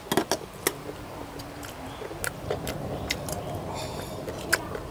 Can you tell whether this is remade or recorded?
recorded